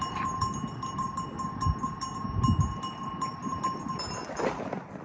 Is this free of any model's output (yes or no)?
yes